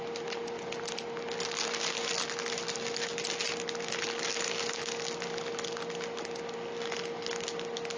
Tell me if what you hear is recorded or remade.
recorded